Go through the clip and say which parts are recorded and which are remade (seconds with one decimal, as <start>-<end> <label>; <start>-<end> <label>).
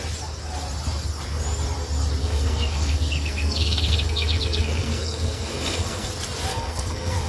0.0-2.2 recorded; 2.2-6.1 remade; 6.1-6.5 recorded; 6.5-7.3 remade